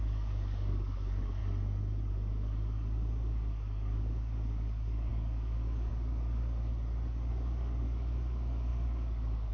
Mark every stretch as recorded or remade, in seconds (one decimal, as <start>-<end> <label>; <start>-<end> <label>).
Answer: 0.0-1.4 remade; 1.4-2.1 recorded; 2.1-6.7 remade; 6.7-7.3 recorded; 7.3-9.5 remade